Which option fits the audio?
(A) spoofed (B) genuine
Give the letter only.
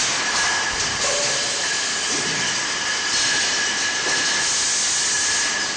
B